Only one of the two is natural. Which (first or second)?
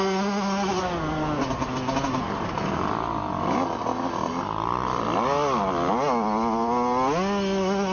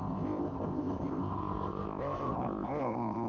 first